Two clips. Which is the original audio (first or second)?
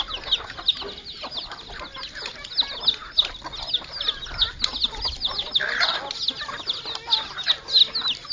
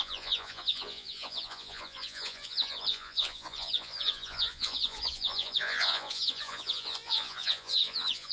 first